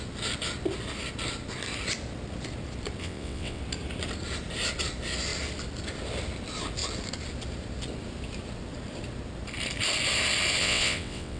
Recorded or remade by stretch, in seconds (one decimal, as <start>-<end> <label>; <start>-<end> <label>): 0.0-3.0 recorded; 3.0-3.6 remade; 3.6-10.6 recorded; 10.6-11.4 remade